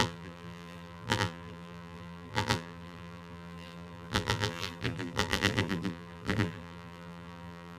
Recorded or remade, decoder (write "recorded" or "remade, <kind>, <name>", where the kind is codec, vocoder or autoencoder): remade, vocoder, BigVGAN v2